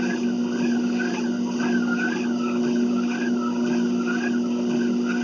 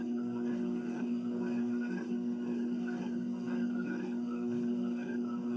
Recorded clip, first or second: first